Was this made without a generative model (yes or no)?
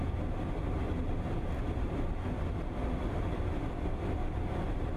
no